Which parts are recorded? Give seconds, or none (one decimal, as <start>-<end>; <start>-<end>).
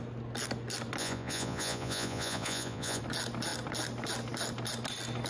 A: 0.0-1.0; 3.0-5.3